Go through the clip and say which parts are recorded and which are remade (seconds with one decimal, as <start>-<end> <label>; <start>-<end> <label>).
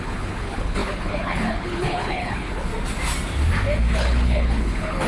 0.0-2.7 remade; 2.7-3.8 recorded; 3.8-5.1 remade